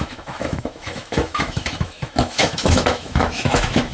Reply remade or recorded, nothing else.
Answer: remade